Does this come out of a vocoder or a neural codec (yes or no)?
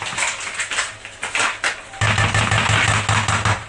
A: no